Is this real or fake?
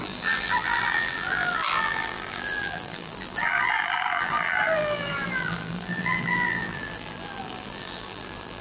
fake